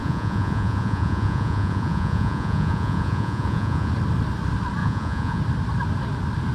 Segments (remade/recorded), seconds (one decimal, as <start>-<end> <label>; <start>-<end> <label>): 0.0-3.9 remade; 3.9-4.8 recorded; 4.8-5.4 remade; 5.4-6.5 recorded